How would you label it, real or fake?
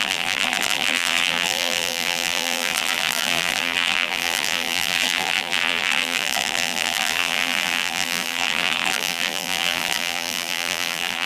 fake